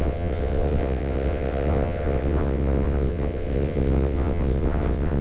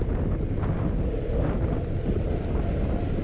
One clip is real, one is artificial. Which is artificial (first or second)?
first